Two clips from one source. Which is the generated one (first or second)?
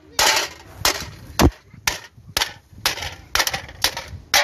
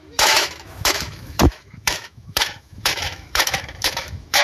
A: second